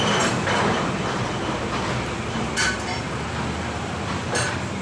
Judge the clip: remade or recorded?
remade